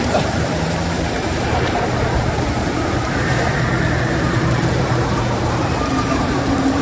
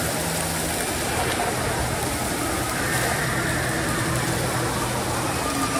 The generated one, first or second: first